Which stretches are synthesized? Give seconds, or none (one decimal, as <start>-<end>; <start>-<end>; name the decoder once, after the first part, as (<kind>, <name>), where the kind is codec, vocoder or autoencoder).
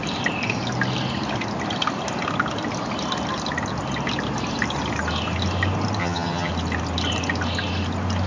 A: 6.0-6.5 (vocoder, HiFi-GAN)